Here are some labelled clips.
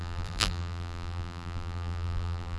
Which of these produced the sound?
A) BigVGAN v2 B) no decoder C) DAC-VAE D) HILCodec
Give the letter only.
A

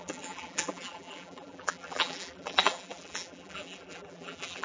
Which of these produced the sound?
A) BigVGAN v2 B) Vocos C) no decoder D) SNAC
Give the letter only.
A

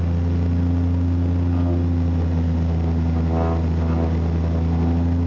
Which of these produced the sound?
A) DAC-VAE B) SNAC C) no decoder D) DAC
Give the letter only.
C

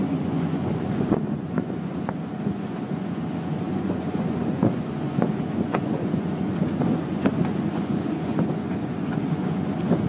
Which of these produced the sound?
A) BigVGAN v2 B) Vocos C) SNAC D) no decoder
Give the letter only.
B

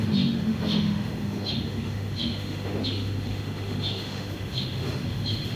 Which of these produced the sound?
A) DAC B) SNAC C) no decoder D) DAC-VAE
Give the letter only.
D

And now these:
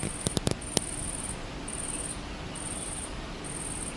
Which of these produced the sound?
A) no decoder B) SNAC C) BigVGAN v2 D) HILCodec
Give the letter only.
A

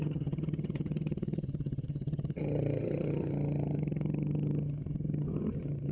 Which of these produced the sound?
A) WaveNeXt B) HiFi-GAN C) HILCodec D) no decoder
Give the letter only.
B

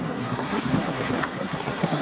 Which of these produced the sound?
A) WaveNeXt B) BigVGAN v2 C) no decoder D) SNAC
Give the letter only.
D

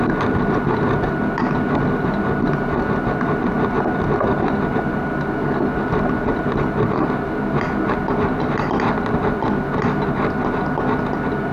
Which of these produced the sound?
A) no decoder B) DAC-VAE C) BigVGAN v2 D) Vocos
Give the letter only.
A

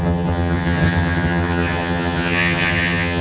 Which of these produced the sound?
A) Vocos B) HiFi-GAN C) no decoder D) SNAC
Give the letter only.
B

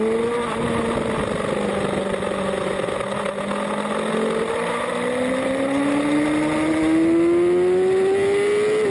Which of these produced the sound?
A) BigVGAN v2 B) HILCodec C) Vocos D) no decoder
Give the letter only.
D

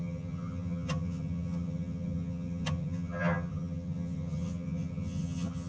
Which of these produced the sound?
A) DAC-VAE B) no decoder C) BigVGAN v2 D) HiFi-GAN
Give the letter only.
D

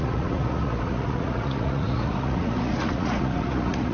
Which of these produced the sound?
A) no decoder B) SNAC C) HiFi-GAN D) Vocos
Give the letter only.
D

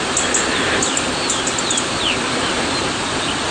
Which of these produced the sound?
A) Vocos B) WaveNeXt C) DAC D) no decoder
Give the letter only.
D